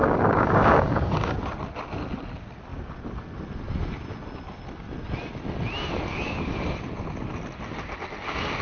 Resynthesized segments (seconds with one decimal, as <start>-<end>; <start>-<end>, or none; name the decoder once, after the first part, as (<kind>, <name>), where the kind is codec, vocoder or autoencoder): 0.0-1.4 (codec, DAC); 6.1-6.6